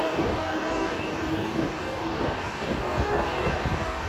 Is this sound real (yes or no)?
no